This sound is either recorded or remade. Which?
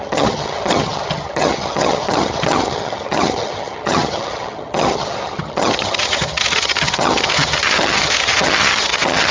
remade